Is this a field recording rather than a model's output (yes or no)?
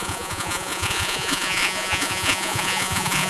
no